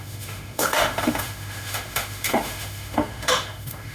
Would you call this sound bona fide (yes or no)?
no